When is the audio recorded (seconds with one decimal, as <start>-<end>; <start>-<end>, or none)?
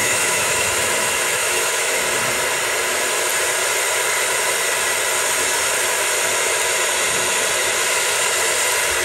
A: 0.9-1.4; 2.0-9.0